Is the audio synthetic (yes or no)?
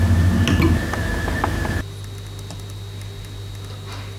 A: no